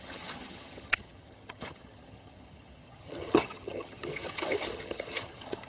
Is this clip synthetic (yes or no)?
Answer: yes